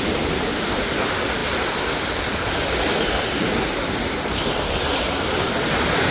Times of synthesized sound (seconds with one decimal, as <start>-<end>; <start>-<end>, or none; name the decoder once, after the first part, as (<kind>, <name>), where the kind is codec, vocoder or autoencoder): 1.4-5.1 (vocoder, BigVGAN v2)